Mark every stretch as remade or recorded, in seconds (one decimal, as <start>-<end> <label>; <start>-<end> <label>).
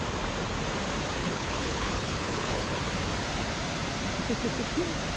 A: 0.0-1.2 recorded; 1.2-2.8 remade; 2.8-5.2 recorded